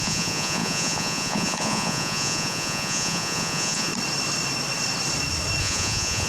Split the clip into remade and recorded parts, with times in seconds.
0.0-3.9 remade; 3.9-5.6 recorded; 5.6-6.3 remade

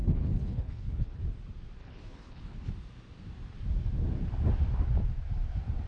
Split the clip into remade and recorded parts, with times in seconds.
0.0-1.2 remade; 1.2-1.8 recorded; 1.8-2.7 remade; 2.7-5.9 recorded

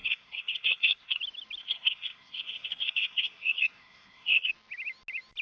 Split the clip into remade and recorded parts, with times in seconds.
0.0-1.2 remade; 1.2-1.6 recorded; 1.6-4.5 remade; 4.5-5.4 recorded